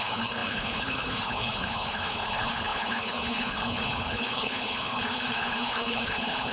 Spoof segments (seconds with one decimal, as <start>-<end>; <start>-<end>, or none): 0.0-6.5